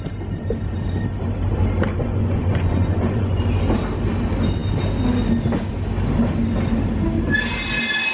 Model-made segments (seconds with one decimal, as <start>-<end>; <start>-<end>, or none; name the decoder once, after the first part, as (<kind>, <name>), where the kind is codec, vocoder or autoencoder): 1.9-3.4 (vocoder, Vocos)